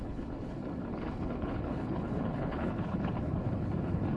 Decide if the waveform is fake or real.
fake